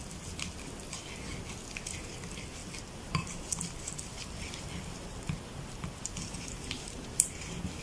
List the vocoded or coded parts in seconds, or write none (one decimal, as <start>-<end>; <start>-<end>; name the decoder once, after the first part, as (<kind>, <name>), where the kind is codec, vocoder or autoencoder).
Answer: none